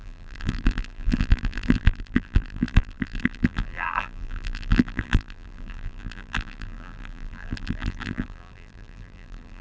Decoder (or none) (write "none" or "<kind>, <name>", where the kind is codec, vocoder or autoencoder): vocoder, BigVGAN v2